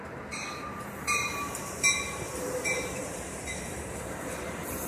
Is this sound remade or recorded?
remade